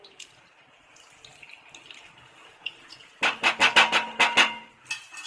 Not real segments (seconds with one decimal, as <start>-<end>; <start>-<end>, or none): 2.4-3.1